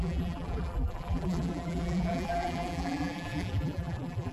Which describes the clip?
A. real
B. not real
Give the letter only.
B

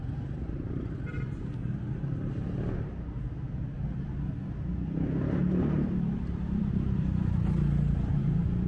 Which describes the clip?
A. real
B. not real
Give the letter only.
B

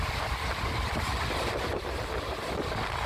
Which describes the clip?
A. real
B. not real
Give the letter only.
A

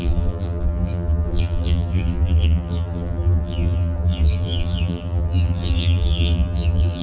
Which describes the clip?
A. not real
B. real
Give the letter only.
A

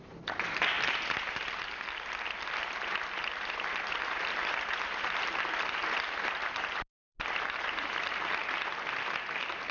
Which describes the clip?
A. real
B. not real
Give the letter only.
A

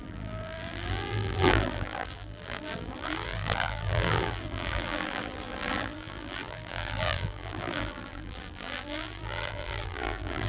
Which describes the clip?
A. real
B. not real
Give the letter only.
B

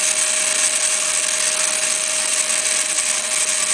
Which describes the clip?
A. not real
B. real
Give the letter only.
B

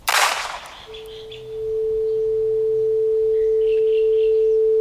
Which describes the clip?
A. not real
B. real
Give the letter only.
B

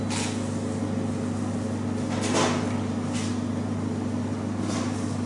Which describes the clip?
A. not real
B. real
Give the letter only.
B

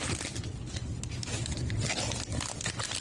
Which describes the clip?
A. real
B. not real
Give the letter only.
A